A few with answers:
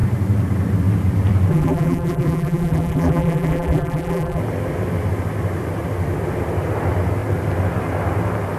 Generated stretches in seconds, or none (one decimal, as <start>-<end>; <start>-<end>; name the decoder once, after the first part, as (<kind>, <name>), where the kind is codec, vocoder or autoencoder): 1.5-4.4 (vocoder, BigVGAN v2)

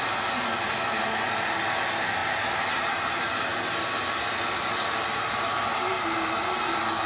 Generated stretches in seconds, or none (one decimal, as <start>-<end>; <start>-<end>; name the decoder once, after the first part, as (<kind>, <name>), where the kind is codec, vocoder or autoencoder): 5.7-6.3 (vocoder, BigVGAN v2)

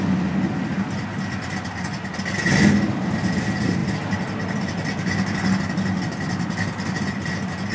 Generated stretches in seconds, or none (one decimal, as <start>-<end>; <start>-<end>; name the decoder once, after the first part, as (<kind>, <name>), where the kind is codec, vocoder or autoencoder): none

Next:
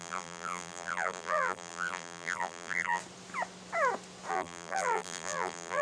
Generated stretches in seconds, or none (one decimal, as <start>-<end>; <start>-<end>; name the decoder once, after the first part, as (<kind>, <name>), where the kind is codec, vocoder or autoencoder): 0.0-3.0 (vocoder, BigVGAN v2); 4.3-5.8

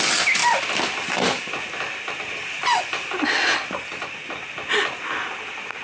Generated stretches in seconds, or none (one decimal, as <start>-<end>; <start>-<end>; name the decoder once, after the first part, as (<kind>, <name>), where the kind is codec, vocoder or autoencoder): 0.4-3.7 (vocoder, BigVGAN v2)

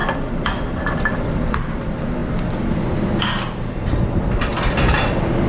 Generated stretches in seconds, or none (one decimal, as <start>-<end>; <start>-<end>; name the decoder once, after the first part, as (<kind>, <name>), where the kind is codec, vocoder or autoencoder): 0.0-1.5 (vocoder, BigVGAN v2); 4.5-5.1

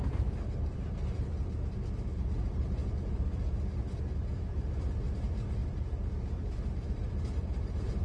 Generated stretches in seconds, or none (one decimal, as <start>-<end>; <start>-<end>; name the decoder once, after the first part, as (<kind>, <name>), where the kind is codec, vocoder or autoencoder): 0.0-8.0 (vocoder, BigVGAN v2)

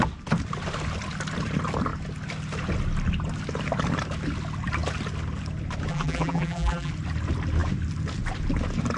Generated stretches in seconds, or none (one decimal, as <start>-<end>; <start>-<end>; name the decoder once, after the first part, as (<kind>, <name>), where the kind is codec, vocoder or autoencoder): 5.9-6.9 (vocoder, BigVGAN v2)